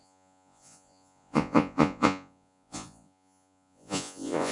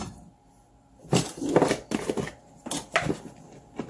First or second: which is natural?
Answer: second